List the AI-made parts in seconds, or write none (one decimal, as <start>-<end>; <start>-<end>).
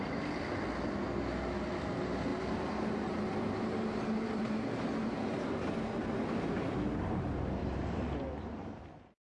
2.3-5.7; 7.6-8.8